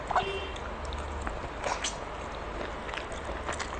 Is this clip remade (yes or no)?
no